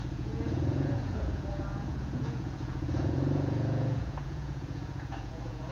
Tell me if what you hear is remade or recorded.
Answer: remade